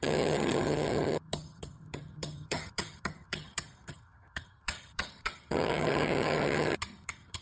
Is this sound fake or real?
fake